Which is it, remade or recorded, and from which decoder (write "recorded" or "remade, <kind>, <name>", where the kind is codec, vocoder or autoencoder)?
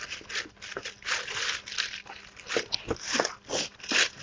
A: recorded